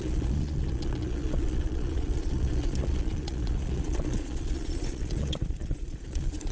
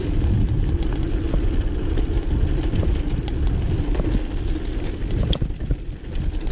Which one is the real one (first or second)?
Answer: second